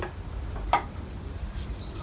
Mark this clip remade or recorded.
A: recorded